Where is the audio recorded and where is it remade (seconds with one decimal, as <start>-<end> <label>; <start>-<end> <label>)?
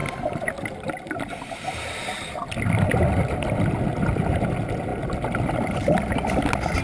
0.0-3.0 remade; 3.0-6.8 recorded